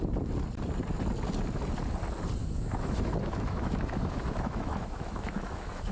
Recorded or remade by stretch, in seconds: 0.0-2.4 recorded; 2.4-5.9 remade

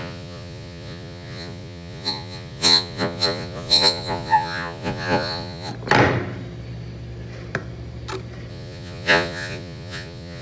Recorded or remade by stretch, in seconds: 0.0-5.7 remade; 5.7-8.5 recorded; 8.5-10.4 remade

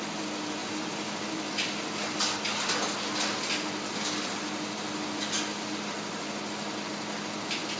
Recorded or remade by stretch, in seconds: 0.0-7.8 recorded

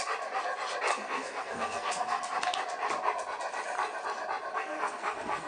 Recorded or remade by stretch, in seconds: 0.0-0.9 recorded; 0.9-2.2 remade; 2.2-4.5 recorded; 4.5-5.5 remade

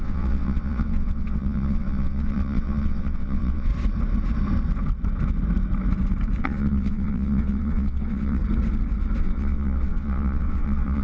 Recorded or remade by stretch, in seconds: 0.0-3.7 remade; 3.7-6.4 recorded; 6.4-8.4 remade; 8.4-9.2 recorded; 9.2-11.0 remade

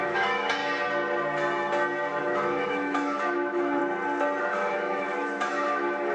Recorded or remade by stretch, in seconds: 0.0-0.6 remade; 0.6-2.2 recorded; 2.2-3.8 remade; 3.8-4.4 recorded; 4.4-6.1 remade

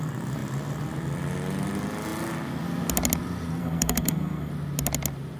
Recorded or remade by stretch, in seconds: 0.0-3.6 recorded; 3.6-4.5 remade; 4.5-5.4 recorded

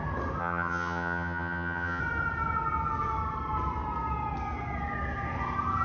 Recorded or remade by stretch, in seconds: 0.0-0.4 recorded; 0.4-2.0 remade; 2.0-5.8 recorded